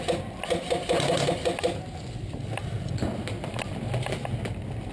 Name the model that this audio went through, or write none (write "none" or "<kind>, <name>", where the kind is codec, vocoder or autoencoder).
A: none